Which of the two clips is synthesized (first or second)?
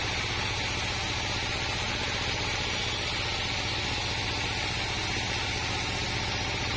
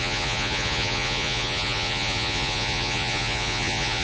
second